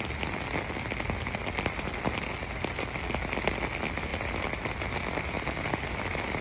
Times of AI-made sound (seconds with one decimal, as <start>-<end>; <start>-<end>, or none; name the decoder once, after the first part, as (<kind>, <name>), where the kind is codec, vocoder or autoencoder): none